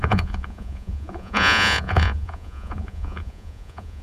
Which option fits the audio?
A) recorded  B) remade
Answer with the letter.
B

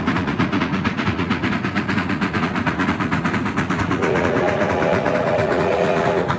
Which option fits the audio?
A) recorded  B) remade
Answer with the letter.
B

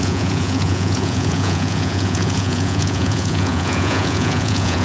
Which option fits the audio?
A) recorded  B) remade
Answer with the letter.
B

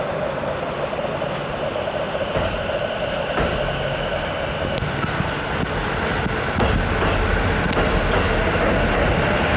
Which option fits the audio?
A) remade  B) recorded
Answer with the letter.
B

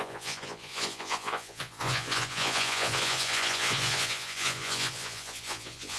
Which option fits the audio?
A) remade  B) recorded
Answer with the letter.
A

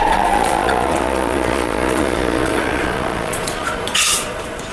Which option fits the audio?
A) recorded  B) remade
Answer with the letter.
B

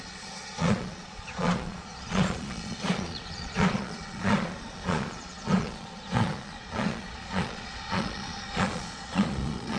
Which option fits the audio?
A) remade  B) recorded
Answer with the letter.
A